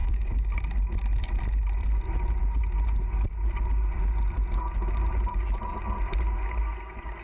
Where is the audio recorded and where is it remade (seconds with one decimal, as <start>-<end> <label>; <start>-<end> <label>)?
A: 0.0-0.6 remade; 0.6-7.2 recorded